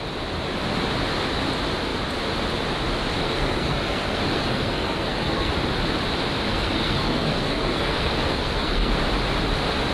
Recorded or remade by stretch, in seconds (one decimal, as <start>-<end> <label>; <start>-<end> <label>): 0.0-3.2 recorded; 3.2-5.5 remade; 5.5-6.5 recorded; 6.5-9.0 remade; 9.0-9.9 recorded